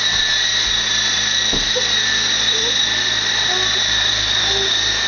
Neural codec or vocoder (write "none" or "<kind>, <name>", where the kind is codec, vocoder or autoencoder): none